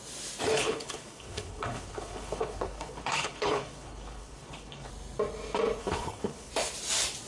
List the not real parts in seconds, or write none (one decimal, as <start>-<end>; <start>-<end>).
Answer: 0.5-4.9; 5.8-6.5